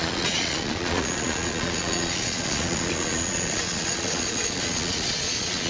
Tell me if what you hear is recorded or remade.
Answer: remade